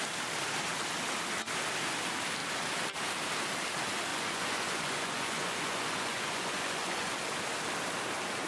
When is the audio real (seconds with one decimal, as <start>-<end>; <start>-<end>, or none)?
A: 0.0-4.1; 7.1-8.5